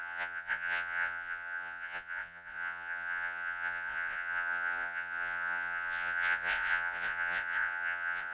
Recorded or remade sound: remade